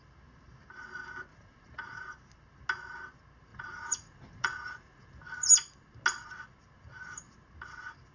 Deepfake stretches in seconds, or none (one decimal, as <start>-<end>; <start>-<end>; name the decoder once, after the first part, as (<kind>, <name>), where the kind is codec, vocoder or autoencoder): 1.3-2.0 (vocoder, Vocos); 3.5-5.5

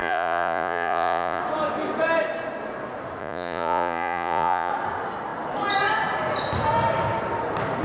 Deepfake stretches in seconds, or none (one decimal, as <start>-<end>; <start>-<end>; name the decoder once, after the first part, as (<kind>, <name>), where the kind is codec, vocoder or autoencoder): 0.0-1.4 (vocoder, Vocos); 3.2-4.7

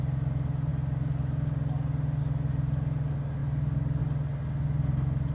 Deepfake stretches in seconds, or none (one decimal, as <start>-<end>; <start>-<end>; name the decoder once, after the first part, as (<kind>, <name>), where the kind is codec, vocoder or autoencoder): none

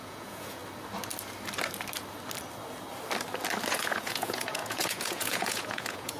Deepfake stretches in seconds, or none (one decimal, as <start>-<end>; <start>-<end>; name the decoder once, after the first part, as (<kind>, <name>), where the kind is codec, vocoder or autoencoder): 0.0-0.6 (vocoder, Vocos); 3.7-6.2

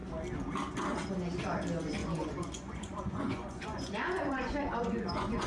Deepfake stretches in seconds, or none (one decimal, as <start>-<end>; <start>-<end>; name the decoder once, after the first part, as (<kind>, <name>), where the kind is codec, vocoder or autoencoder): 2.0-5.5 (vocoder, Vocos)

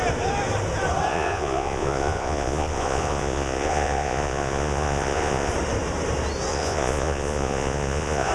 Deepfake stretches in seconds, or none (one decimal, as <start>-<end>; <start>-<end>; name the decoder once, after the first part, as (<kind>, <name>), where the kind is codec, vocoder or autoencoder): 1.1-5.5 (vocoder, Vocos); 6.5-8.3